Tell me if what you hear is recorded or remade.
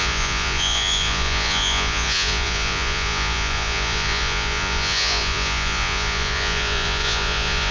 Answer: remade